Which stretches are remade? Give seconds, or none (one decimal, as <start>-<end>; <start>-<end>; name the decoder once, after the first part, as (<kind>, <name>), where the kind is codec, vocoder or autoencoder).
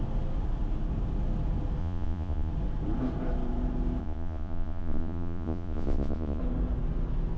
1.8-2.5 (vocoder, Vocos); 4.0-6.4